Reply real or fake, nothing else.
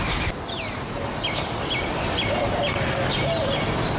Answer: fake